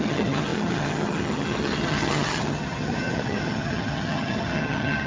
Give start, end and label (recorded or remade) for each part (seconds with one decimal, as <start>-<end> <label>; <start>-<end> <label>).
0.0-5.1 remade